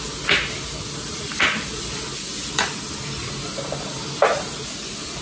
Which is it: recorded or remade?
recorded